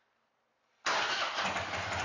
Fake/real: real